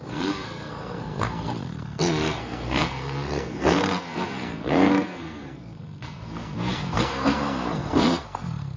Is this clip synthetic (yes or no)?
yes